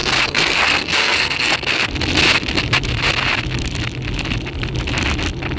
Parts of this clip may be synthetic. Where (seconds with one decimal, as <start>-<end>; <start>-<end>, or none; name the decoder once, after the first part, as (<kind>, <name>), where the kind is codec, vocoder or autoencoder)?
0.0-1.9 (codec, SNAC)